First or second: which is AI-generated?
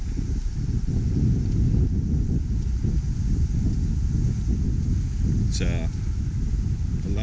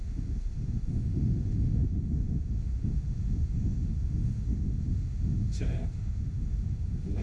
second